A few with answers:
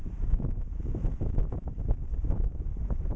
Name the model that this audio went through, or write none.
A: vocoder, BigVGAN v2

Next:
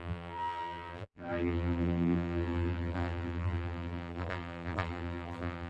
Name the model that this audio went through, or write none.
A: vocoder, BigVGAN v2